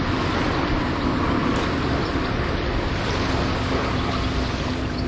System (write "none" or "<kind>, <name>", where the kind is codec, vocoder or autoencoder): none